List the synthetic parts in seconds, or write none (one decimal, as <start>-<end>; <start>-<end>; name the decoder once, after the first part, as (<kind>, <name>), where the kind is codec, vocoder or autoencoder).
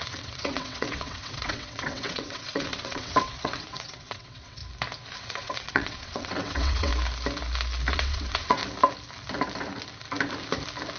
0.0-4.6 (vocoder, WaveNeXt); 5.2-6.9; 7.9-8.6